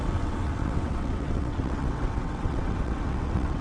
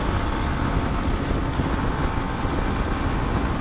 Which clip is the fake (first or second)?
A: first